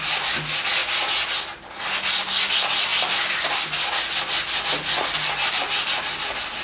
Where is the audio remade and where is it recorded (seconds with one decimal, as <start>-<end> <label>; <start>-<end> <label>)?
0.0-6.6 recorded